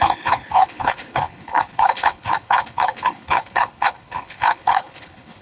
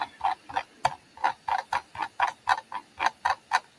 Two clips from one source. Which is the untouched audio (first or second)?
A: second